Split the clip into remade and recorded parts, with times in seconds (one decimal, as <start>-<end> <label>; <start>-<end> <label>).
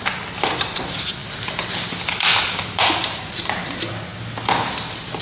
0.0-1.2 recorded; 1.2-2.8 remade; 2.8-4.1 recorded; 4.1-5.2 remade